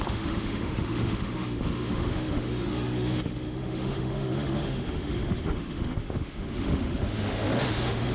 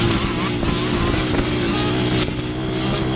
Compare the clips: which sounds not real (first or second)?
first